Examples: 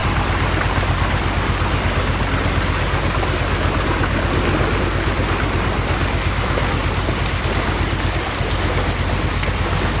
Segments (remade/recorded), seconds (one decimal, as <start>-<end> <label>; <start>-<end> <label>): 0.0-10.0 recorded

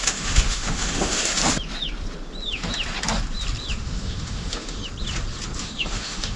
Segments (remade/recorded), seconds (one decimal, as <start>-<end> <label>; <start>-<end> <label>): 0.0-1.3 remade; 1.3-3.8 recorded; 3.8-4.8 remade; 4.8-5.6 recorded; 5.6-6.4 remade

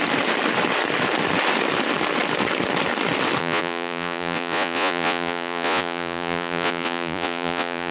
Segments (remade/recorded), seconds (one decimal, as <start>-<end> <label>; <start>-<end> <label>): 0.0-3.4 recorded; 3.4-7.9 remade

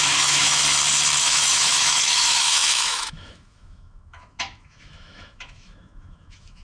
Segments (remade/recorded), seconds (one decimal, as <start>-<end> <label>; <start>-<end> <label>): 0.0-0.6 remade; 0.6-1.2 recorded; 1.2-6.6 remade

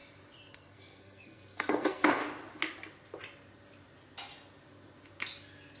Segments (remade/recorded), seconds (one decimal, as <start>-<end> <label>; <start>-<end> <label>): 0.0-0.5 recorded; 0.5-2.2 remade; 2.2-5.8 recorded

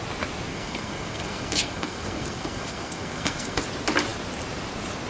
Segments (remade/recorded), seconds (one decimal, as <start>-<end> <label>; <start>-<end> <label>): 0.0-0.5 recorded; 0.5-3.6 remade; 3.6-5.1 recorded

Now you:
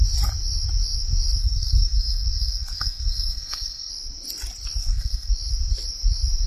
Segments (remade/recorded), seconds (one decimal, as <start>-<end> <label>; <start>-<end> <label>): 0.0-1.4 recorded; 1.4-3.9 remade; 3.9-4.8 recorded; 4.8-5.3 remade; 5.3-6.5 recorded